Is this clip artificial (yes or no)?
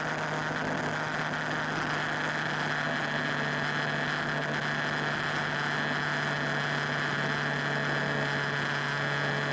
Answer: no